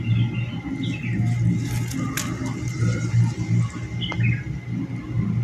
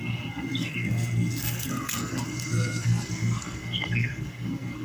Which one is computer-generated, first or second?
second